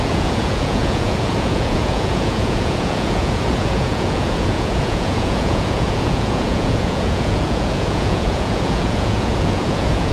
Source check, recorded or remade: remade